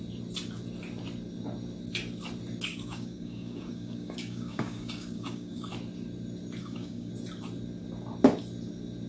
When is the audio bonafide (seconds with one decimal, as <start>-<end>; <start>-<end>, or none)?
0.0-2.7; 5.7-6.6; 7.1-9.1